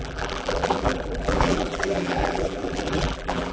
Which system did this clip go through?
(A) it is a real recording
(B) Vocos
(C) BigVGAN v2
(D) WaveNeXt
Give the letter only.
C